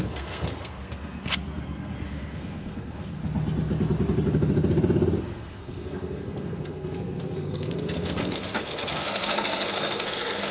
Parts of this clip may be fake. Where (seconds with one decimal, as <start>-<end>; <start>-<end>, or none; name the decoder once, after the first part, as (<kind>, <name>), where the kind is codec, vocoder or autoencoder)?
0.0-3.2 (codec, SNAC); 5.2-10.5